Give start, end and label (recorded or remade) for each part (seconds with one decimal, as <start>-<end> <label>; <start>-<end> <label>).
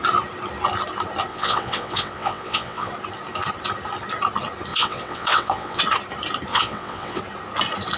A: 0.0-1.3 recorded; 1.3-2.9 remade; 2.9-4.7 recorded; 4.7-5.8 remade; 5.8-6.5 recorded; 6.5-7.2 remade; 7.2-8.0 recorded